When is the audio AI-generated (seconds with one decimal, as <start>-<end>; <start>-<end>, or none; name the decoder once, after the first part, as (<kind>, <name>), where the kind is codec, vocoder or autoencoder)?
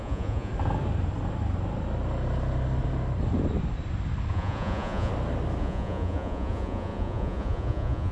0.0-0.5 (vocoder, Vocos); 4.3-5.1; 5.6-8.1